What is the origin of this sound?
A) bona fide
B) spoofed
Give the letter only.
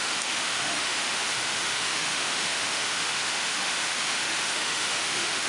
B